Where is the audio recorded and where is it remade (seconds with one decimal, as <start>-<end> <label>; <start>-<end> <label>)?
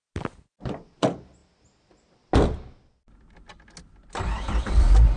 0.0-5.2 recorded